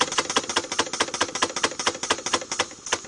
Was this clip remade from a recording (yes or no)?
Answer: no